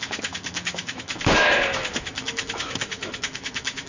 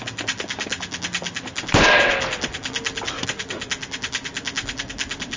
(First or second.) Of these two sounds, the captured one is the second